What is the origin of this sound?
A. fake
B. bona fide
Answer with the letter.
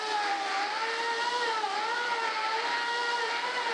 A